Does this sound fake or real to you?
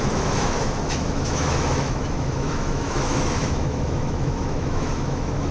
fake